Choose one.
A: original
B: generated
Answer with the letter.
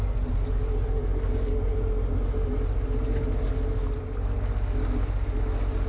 A